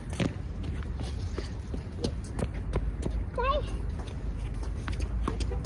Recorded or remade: recorded